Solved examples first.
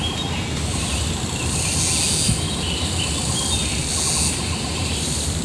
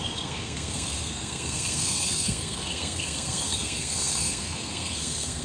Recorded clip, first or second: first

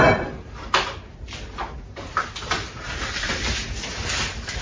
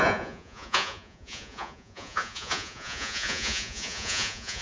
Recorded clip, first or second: first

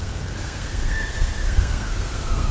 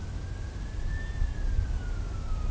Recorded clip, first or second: second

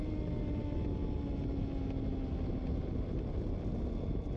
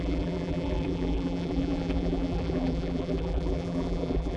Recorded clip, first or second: first